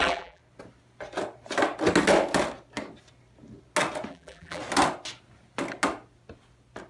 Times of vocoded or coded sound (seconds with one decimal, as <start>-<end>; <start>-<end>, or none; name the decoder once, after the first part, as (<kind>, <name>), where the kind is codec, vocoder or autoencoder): 0.0-0.4 (vocoder, BigVGAN v2); 4.1-4.6